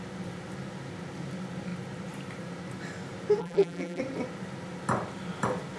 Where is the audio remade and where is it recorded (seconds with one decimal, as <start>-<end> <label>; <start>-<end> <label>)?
0.0-3.4 recorded; 3.4-4.0 remade; 4.0-5.8 recorded